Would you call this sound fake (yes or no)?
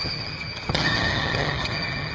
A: yes